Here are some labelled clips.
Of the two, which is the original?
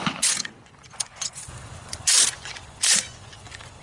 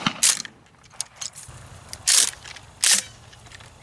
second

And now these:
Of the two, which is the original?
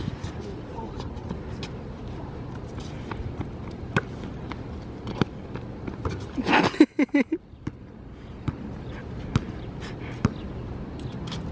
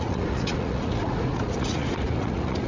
first